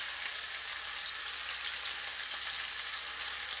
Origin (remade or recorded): recorded